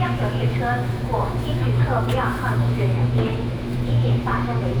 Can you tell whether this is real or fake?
fake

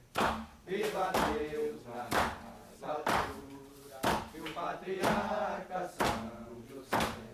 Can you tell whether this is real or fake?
real